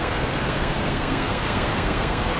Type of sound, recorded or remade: remade